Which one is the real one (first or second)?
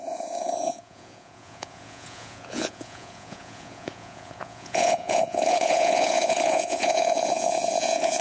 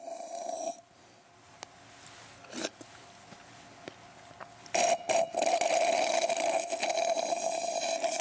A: second